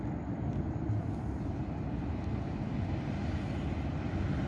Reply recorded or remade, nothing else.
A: recorded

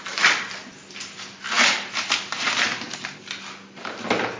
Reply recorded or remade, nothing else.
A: recorded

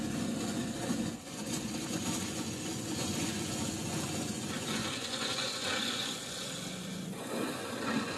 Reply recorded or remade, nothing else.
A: remade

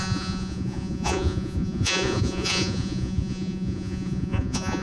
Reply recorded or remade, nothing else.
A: remade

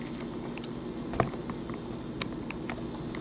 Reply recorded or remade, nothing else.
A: recorded